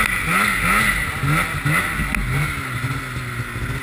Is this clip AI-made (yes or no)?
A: no